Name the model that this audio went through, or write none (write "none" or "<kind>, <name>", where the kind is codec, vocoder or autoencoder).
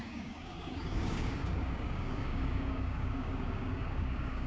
codec, DAC